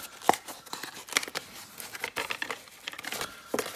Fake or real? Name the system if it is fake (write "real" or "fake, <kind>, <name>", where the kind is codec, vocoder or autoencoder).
real